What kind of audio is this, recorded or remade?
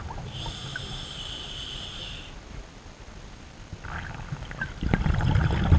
recorded